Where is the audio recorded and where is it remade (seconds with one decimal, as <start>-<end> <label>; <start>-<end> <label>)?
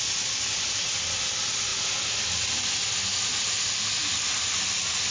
0.0-5.1 recorded